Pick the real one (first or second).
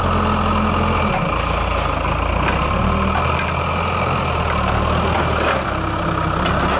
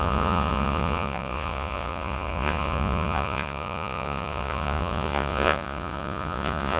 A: first